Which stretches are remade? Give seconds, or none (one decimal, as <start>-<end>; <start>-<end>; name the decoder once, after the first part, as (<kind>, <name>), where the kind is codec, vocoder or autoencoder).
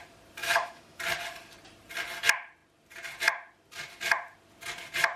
0.4-1.0 (autoencoder, DAC-VAE)